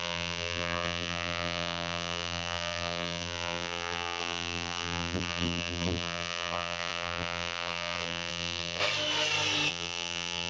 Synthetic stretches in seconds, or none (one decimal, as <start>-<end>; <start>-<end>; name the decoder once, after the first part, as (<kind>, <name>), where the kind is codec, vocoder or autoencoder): 0.0-8.8 (vocoder, BigVGAN v2); 9.7-10.5